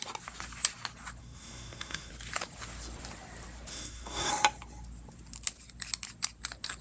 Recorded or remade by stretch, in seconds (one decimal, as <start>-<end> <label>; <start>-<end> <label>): 0.0-1.2 recorded; 1.2-2.1 remade; 2.1-3.7 recorded; 3.7-4.3 remade; 4.3-6.8 recorded